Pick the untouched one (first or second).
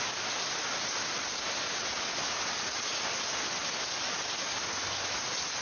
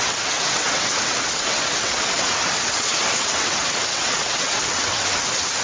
first